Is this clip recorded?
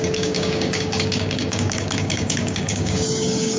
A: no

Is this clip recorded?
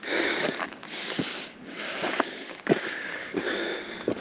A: no